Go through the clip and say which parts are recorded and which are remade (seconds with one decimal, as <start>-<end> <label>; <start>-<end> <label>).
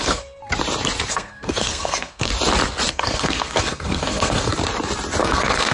0.0-0.4 remade; 0.4-1.1 recorded; 1.1-2.3 remade; 2.3-2.9 recorded; 2.9-4.5 remade; 4.5-5.2 recorded; 5.2-5.7 remade